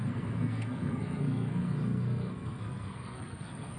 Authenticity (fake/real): fake